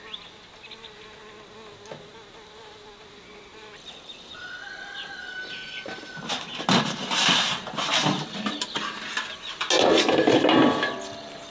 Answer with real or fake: real